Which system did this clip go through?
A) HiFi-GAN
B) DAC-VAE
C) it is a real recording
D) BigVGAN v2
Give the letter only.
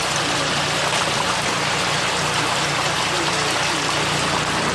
C